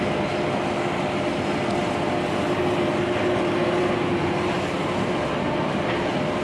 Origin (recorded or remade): recorded